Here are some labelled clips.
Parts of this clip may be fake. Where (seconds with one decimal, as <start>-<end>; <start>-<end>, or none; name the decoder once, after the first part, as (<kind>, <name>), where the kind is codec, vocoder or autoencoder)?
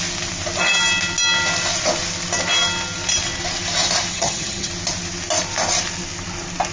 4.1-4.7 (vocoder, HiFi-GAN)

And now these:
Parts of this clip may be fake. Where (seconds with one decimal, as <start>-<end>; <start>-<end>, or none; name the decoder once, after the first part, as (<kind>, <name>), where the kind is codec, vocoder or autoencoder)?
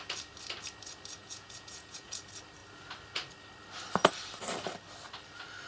1.2-2.2 (vocoder, Vocos)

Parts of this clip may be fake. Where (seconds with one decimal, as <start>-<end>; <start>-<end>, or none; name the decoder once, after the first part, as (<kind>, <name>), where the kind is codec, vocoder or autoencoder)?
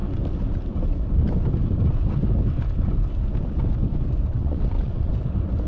4.3-5.1 (vocoder, WaveNeXt)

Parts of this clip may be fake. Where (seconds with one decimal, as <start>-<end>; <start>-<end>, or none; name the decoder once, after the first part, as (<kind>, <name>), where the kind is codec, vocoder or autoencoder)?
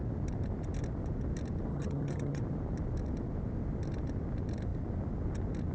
1.7-2.4 (vocoder, HiFi-GAN)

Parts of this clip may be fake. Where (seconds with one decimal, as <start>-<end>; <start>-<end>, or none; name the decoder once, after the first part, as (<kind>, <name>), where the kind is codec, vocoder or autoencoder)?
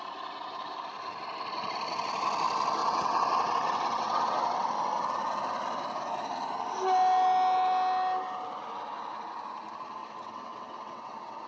2.8-4.7 (vocoder, WaveNeXt); 10.0-11.5